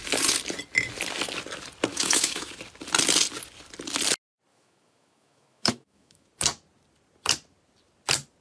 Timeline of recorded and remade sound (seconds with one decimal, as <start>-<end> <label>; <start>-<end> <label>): 0.0-1.9 recorded; 1.9-2.5 remade; 2.5-4.5 recorded; 4.5-6.3 remade; 6.3-8.4 recorded